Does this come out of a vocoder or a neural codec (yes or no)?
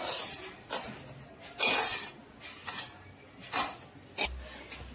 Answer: no